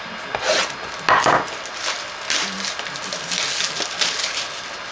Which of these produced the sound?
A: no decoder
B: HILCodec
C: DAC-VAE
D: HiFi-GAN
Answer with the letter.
A